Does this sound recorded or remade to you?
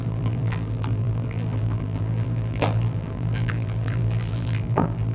remade